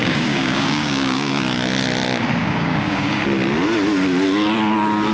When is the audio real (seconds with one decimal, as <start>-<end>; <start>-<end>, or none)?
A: 1.3-2.4; 3.2-5.1